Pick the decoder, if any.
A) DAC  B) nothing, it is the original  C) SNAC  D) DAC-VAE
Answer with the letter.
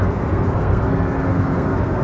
C